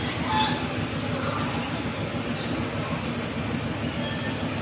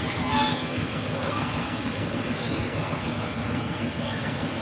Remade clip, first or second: second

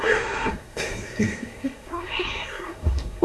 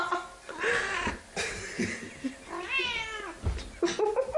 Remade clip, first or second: first